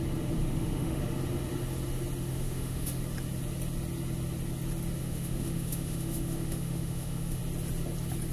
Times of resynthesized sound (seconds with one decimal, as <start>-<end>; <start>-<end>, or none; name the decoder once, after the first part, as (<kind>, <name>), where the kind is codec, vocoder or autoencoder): 0.4-1.0 (autoencoder, DAC-VAE); 2.3-3.0; 5.0-7.4